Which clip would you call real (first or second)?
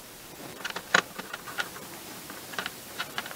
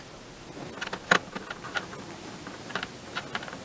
second